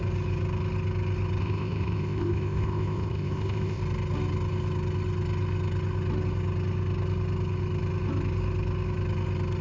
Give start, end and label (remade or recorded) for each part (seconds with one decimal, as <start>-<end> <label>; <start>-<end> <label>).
0.0-1.4 recorded; 1.4-3.8 remade; 3.8-9.6 recorded